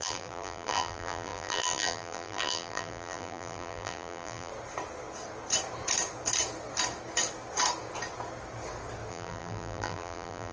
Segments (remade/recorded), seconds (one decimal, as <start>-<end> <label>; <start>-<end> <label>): 0.0-4.5 remade; 4.5-9.1 recorded; 9.1-10.5 remade